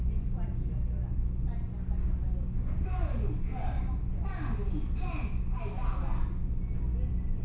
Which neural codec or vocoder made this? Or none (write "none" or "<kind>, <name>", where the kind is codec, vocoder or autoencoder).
none